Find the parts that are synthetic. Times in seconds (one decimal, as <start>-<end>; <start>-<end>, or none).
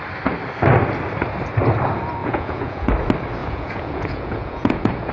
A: 2.2-2.9; 3.4-5.1